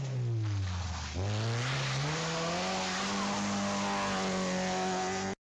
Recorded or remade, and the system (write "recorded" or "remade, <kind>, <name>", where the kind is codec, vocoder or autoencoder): recorded